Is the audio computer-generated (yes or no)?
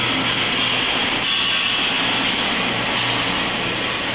no